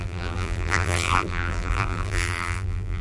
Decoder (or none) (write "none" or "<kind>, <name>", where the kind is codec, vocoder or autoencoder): vocoder, BigVGAN v2